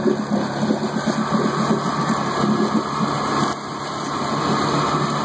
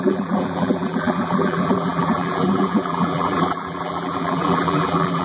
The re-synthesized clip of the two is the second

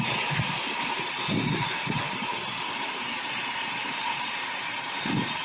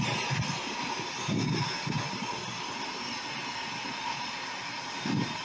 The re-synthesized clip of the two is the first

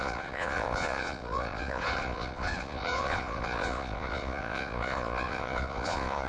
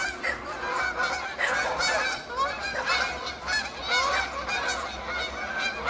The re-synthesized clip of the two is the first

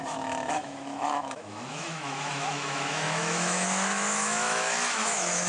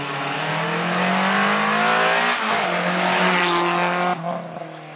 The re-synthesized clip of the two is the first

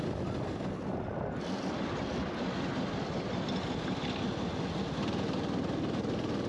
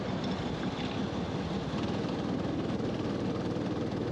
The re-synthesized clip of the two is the second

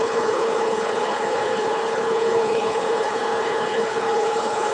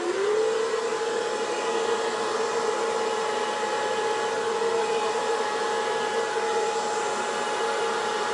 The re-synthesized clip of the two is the first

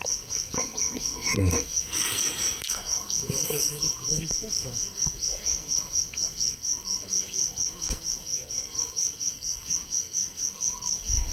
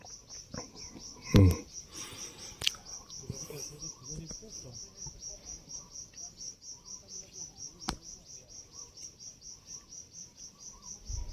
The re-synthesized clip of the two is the first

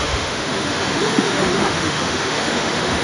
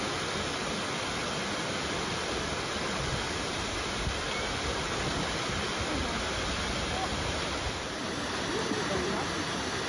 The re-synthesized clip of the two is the first